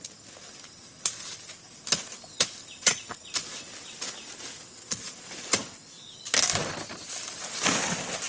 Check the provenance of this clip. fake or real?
real